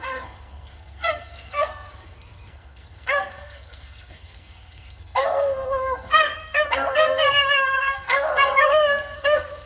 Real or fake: fake